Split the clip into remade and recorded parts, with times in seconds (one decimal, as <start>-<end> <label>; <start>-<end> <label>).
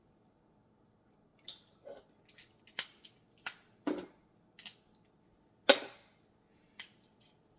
0.0-7.6 recorded